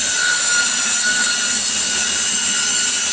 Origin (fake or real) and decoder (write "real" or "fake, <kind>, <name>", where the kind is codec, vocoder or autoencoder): real